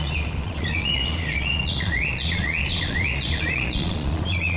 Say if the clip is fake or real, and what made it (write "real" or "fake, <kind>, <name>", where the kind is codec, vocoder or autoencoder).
fake, vocoder, Vocos